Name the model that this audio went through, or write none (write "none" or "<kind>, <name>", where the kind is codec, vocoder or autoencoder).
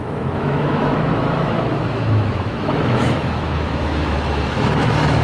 autoencoder, DAC-VAE